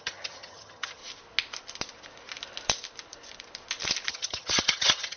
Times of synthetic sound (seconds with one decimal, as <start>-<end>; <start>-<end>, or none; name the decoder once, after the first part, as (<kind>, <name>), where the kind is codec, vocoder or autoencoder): 0.0-1.0 (vocoder, HiFi-GAN); 4.1-5.2